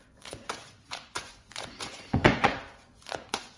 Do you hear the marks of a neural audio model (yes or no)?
yes